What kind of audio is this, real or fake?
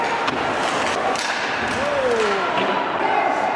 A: real